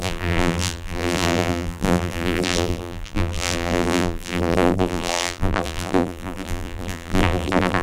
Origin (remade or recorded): remade